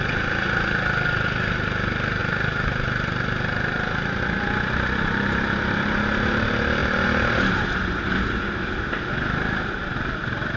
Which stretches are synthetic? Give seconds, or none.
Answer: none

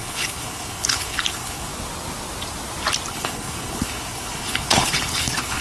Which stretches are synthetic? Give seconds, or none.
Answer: 0.0-1.7 (codec, HILCodec); 3.1-5.6

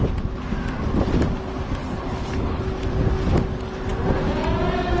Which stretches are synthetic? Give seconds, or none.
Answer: 1.8-2.6 (codec, HILCodec)

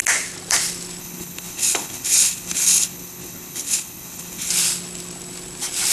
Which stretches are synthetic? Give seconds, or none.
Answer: 1.0-4.5 (codec, HILCodec)

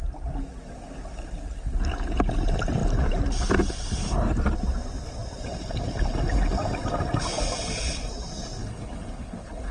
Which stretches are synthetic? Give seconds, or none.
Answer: 8.6-9.7 (codec, HILCodec)

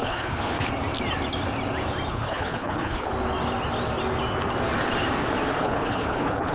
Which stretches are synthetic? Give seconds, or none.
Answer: 0.0-0.7 (codec, HILCodec); 2.1-3.1; 5.6-6.5